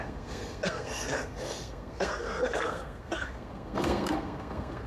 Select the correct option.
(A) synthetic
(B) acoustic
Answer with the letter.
A